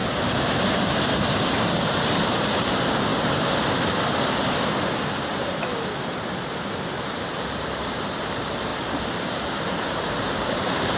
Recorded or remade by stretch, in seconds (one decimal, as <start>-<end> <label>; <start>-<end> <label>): 0.0-3.1 remade; 3.1-4.7 recorded; 4.7-11.0 remade